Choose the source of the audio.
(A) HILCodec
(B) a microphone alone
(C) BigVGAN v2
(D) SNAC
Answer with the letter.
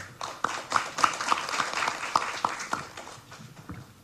B